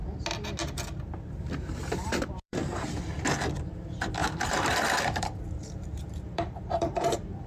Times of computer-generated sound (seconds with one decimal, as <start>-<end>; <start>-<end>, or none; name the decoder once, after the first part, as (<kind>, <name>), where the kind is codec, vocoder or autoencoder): 1.4-2.6 (vocoder, BigVGAN v2); 3.6-7.5